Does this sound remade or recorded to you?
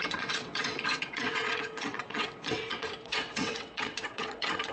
remade